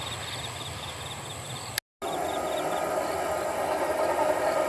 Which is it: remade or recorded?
recorded